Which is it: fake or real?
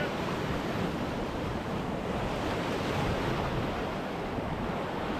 real